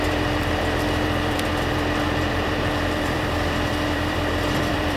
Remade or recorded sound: remade